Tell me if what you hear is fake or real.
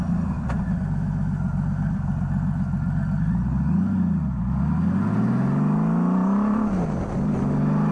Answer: real